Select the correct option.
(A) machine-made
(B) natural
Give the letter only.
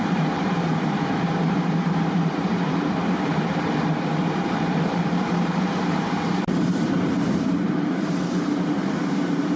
A